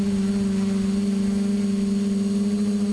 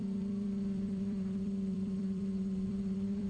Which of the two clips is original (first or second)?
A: first